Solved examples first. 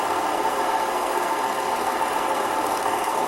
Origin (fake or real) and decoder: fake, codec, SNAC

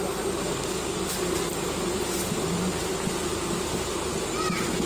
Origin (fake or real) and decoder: real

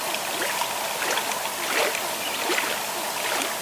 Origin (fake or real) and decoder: real